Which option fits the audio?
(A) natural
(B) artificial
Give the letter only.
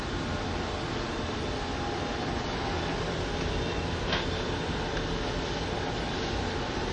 A